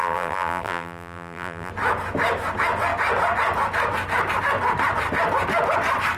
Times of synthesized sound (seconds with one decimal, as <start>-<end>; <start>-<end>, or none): 0.0-1.7